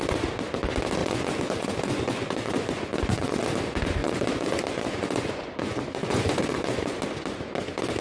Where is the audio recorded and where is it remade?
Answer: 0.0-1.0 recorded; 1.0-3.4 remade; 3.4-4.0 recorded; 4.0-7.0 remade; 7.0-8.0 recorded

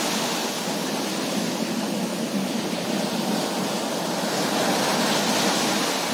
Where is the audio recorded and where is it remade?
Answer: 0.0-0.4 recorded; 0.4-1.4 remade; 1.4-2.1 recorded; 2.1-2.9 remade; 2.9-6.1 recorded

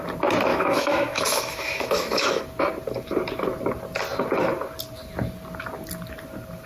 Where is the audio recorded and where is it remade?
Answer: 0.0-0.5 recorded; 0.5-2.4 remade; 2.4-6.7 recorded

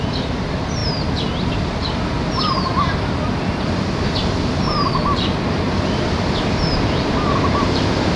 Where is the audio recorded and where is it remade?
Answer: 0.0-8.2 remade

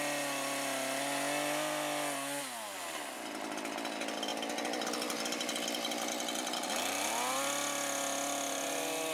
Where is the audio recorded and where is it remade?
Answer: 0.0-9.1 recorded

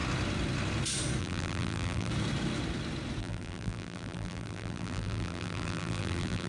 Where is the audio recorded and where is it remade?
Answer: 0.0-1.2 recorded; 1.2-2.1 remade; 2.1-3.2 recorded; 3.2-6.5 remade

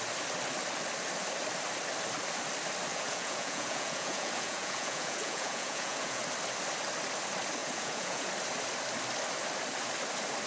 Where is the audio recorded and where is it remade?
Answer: 0.0-2.9 recorded; 2.9-6.2 remade; 6.2-7.6 recorded; 7.6-8.3 remade; 8.3-10.5 recorded

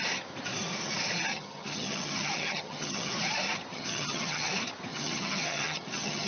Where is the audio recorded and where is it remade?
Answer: 0.0-1.3 recorded; 1.3-3.1 remade; 3.1-3.7 recorded; 3.7-4.5 remade; 4.5-4.9 recorded; 4.9-6.3 remade